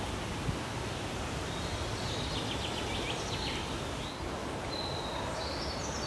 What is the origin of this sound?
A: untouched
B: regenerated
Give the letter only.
A